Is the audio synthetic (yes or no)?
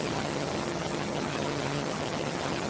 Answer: yes